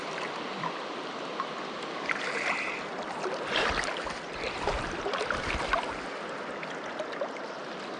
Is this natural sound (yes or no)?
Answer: yes